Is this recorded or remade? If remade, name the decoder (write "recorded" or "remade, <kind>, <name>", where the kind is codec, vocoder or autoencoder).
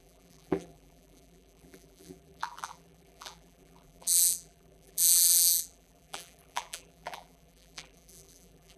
remade, vocoder, BigVGAN v2